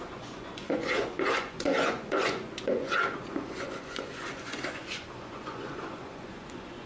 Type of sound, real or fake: fake